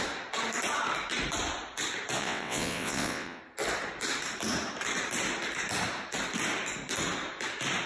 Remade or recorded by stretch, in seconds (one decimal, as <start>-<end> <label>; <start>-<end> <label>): 0.0-2.2 recorded; 2.2-3.4 remade; 3.4-7.9 recorded